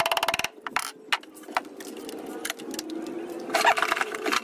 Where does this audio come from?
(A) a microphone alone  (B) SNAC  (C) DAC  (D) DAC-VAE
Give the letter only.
A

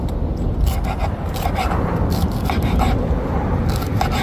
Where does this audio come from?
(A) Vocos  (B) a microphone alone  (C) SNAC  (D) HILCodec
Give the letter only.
B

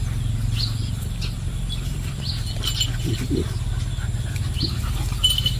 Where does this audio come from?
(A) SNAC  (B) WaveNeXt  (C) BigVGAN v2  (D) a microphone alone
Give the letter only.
D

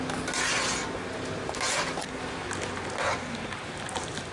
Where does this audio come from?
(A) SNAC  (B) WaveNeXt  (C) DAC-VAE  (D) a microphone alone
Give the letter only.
D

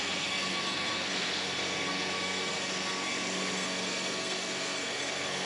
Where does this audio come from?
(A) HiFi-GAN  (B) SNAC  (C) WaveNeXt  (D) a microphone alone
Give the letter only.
B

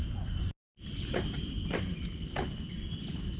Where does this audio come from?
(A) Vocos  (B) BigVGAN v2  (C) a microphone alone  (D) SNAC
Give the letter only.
C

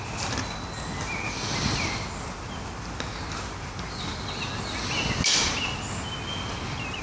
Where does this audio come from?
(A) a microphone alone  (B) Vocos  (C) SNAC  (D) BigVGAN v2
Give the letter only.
A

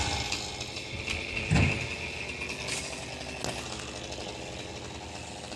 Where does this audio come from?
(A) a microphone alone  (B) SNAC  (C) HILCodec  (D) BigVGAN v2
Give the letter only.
A